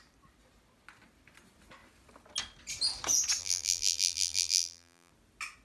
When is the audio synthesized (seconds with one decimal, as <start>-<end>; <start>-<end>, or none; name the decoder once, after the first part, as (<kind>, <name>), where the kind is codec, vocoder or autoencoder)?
3.4-5.1 (vocoder, BigVGAN v2)